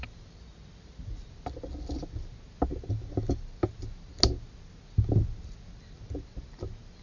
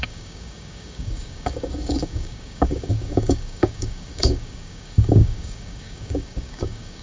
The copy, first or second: second